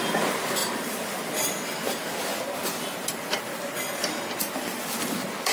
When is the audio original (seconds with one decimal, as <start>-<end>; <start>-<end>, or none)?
0.0-5.5